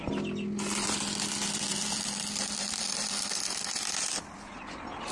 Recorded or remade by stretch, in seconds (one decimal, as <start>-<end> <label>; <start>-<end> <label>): 0.0-5.1 recorded